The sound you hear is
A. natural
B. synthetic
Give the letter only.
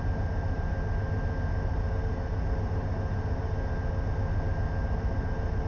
A